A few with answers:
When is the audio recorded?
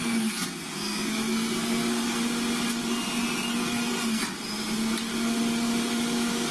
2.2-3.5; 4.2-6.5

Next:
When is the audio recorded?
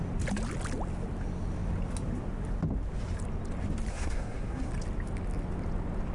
0.0-3.9; 4.7-6.1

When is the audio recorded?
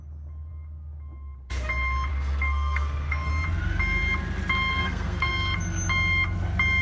0.0-2.1; 3.3-4.7; 5.3-6.8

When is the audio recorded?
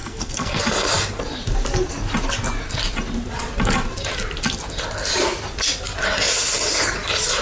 0.6-7.4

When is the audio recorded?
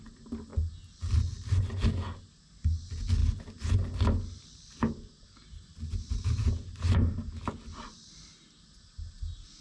0.0-9.6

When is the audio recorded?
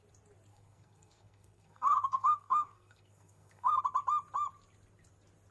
0.0-0.5; 3.8-5.5